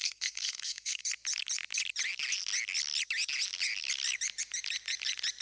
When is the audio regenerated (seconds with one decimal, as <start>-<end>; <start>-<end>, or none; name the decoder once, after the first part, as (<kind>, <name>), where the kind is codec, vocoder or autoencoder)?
0.0-1.0 (codec, SNAC)